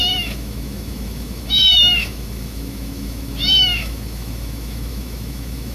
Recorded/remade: remade